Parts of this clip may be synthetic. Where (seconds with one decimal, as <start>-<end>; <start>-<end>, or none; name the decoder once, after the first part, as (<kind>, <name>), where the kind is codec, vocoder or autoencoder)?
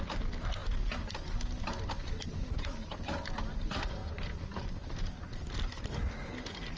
none